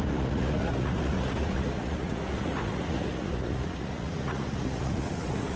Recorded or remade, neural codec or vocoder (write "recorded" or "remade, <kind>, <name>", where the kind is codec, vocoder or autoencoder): remade, vocoder, Vocos